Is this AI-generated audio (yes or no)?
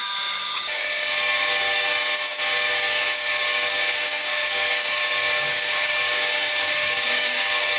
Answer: yes